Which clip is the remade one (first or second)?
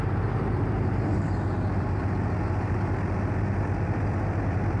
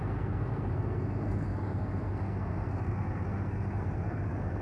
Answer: second